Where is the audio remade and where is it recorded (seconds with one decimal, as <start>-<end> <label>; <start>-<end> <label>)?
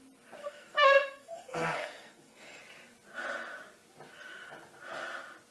0.0-0.4 recorded; 0.4-2.6 remade; 2.6-5.5 recorded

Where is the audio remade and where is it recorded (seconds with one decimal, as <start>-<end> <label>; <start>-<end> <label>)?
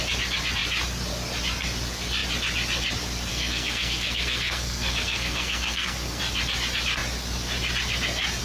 0.0-3.3 recorded; 3.3-6.2 remade; 6.2-8.4 recorded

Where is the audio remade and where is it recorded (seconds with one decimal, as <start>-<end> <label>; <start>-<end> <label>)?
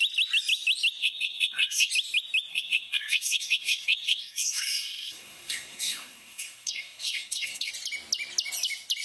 0.0-1.0 recorded; 1.0-1.9 remade; 1.9-2.5 recorded; 2.5-7.7 remade; 7.7-9.0 recorded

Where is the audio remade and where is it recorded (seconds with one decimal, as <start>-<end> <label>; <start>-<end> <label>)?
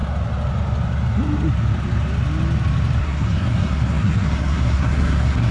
0.0-3.0 recorded; 3.0-5.5 remade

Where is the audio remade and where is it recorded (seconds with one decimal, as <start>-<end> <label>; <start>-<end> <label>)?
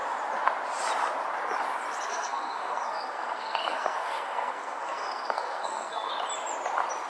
0.0-2.1 recorded; 2.1-6.1 remade; 6.1-7.1 recorded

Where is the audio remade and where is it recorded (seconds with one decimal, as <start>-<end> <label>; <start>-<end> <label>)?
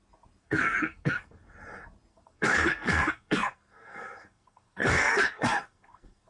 0.0-0.4 recorded; 0.4-1.4 remade; 1.4-2.1 recorded; 2.1-6.3 remade